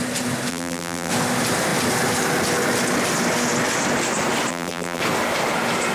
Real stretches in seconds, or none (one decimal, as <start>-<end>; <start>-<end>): 0.0-0.5; 1.1-4.5; 5.0-5.9